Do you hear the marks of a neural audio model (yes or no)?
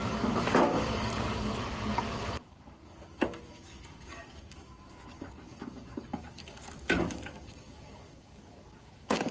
yes